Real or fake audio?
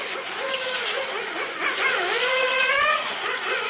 fake